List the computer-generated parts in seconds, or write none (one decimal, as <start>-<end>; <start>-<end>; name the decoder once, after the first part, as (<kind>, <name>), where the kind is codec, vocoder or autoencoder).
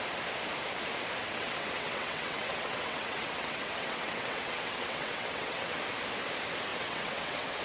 1.2-5.8 (vocoder, WaveNeXt); 6.7-7.6